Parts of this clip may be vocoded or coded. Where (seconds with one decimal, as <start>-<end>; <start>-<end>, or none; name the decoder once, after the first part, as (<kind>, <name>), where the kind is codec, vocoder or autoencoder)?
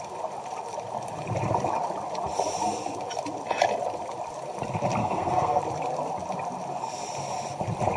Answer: 5.0-5.6 (codec, SNAC)